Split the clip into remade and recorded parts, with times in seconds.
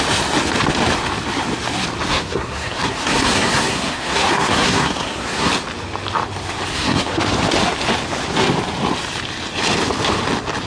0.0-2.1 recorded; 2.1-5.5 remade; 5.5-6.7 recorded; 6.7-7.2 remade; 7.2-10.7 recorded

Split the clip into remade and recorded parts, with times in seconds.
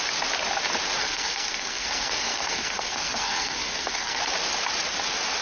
0.0-1.0 recorded; 1.0-4.2 remade; 4.2-5.4 recorded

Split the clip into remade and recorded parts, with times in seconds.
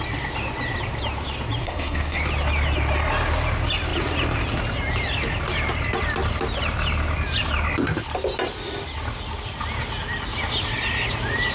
0.0-1.6 recorded; 1.6-2.2 remade; 2.2-11.5 recorded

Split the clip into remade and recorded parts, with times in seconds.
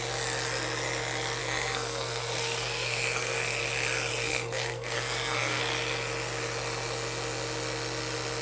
0.0-1.4 recorded; 1.4-3.6 remade; 3.6-4.1 recorded; 4.1-5.6 remade; 5.6-8.4 recorded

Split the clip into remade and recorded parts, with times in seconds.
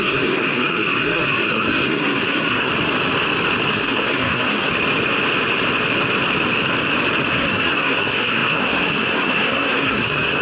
0.0-2.7 remade; 2.7-3.7 recorded; 3.7-4.7 remade; 4.7-7.3 recorded; 7.3-10.4 remade